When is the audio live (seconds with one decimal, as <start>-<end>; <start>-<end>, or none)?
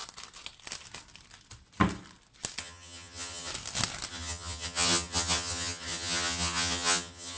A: 0.0-2.6; 3.5-4.1